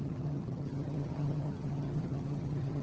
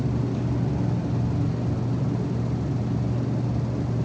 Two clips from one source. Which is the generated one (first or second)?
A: first